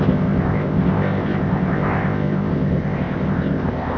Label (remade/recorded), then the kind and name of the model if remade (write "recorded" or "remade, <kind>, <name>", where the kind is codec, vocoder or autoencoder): remade, codec, ZipCodec